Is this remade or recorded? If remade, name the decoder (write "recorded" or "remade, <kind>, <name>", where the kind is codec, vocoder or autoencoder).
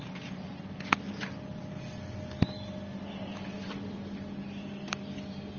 recorded